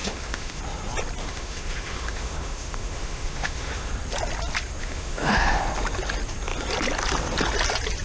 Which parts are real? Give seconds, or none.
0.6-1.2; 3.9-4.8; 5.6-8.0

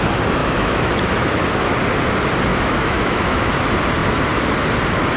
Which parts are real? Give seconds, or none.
0.0-0.4; 1.0-2.5; 3.5-5.2

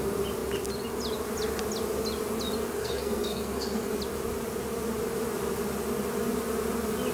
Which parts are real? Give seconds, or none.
0.0-2.8; 4.0-7.1

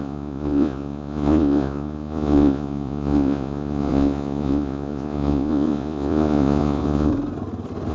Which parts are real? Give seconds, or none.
7.1-7.9

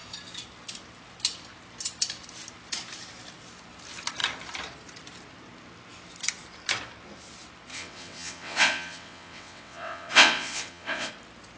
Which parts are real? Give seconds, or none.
0.0-7.7; 11.1-11.6

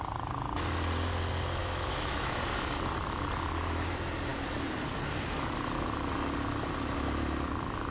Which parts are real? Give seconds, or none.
0.0-1.6; 2.4-7.9

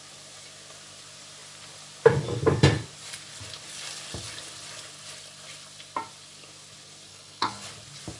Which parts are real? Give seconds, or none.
0.0-7.1; 7.7-8.2